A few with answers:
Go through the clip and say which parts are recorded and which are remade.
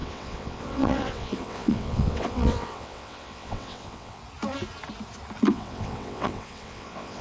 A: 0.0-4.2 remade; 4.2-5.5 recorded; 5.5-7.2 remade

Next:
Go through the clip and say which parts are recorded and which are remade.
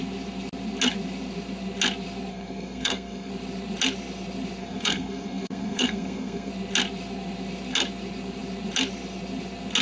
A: 0.0-2.3 recorded; 2.3-3.3 remade; 3.3-4.6 recorded; 4.6-6.5 remade; 6.5-9.8 recorded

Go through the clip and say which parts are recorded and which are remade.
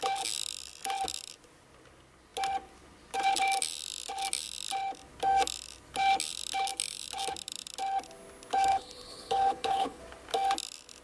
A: 0.0-8.7 recorded; 8.7-10.0 remade; 10.0-11.0 recorded